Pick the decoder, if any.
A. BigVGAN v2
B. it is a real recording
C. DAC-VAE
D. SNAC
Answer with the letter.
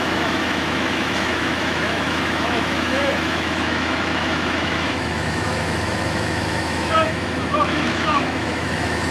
C